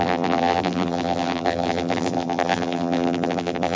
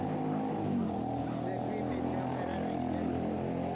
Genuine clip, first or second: second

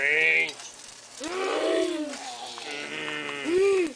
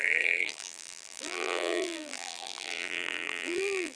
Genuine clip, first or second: first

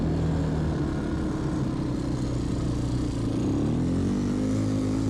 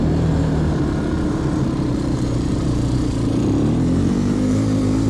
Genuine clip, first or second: first